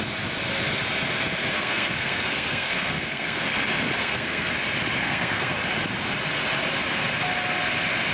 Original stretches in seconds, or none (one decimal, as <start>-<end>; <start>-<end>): 0.0-1.5; 3.4-4.0; 4.5-5.0; 5.5-8.1